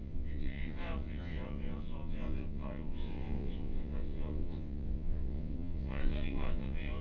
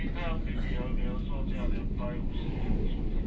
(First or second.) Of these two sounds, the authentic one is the second